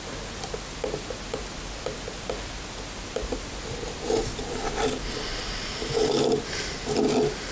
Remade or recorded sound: recorded